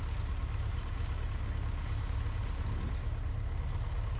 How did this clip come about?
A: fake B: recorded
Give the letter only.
B